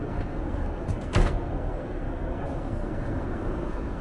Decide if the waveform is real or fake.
fake